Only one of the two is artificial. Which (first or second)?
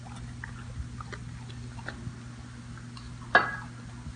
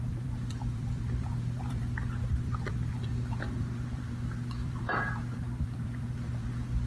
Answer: second